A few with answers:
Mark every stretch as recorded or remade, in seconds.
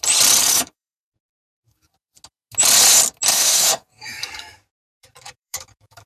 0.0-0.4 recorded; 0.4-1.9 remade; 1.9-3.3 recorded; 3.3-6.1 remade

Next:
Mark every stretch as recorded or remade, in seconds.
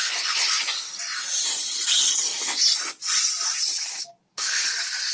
0.0-5.1 recorded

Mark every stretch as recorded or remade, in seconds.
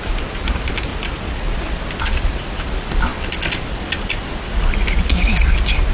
0.0-5.9 recorded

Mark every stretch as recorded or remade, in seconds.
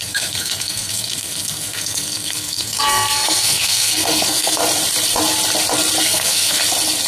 0.0-4.6 remade; 4.6-6.0 recorded; 6.0-6.6 remade; 6.6-7.1 recorded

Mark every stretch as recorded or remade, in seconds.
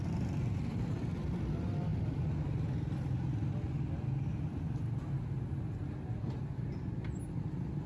0.0-7.9 recorded